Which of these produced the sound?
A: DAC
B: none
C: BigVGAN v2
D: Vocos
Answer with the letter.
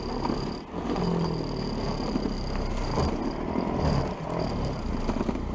B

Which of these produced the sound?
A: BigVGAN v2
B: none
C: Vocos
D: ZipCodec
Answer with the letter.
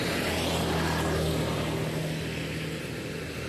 B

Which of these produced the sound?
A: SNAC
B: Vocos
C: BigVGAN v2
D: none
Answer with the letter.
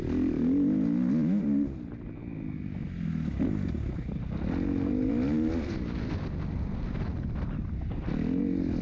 D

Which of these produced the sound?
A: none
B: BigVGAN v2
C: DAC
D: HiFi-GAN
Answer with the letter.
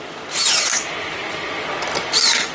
A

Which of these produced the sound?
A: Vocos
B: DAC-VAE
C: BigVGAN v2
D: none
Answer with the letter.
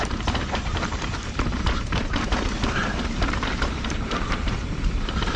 C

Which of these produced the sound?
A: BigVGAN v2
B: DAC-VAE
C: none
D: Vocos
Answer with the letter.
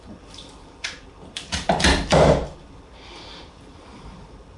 A